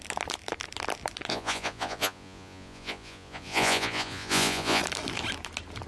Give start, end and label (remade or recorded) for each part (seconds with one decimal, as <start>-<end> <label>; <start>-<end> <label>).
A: 0.0-1.3 recorded; 1.3-4.8 remade; 4.8-5.9 recorded